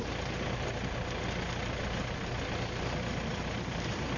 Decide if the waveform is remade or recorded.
recorded